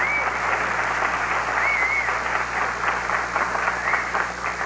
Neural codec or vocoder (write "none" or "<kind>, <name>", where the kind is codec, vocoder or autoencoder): none